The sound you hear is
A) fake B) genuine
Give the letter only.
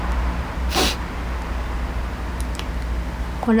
B